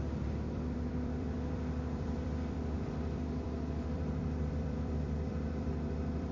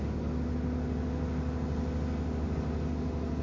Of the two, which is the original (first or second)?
second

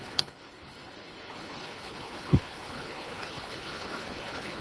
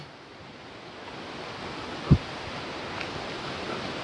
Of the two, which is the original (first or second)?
second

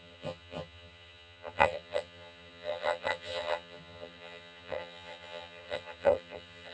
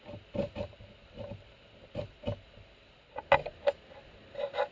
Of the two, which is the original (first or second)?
second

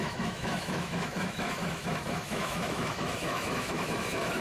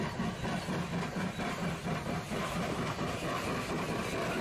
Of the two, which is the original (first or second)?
second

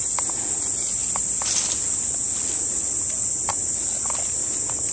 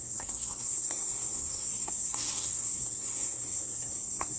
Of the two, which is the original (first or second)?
first